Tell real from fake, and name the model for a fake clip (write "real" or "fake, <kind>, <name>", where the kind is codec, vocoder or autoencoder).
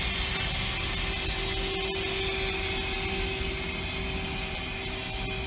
real